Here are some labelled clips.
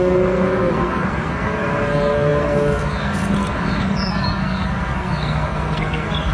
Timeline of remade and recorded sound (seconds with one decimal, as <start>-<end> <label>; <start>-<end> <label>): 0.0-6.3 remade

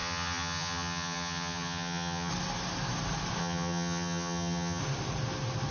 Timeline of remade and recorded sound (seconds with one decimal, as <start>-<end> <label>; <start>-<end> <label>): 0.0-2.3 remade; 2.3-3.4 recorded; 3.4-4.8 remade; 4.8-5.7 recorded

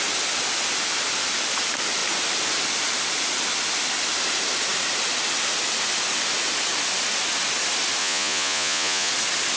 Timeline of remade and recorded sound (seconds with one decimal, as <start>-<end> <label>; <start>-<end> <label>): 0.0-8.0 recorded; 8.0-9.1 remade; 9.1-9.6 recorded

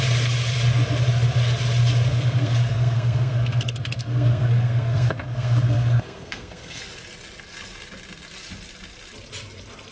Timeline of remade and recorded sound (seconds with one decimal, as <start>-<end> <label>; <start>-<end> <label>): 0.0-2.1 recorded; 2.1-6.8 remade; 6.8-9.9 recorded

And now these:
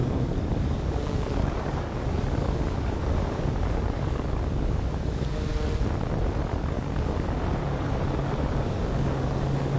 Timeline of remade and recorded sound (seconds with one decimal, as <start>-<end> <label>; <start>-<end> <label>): 0.0-5.5 remade; 5.5-6.5 recorded; 6.5-9.8 remade

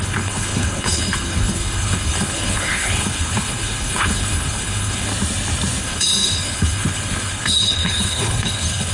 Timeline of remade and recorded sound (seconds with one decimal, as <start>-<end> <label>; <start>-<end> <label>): 0.0-5.1 remade; 5.1-5.8 recorded; 5.8-8.9 remade